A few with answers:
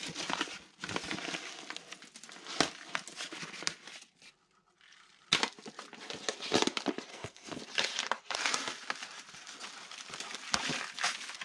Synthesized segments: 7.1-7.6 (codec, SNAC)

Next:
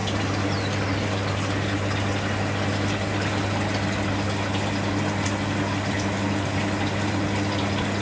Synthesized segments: 0.0-3.1 (vocoder, BigVGAN v2)

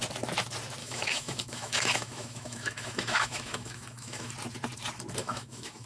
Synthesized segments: 0.8-4.3 (autoencoder, DAC-VAE); 5.2-5.9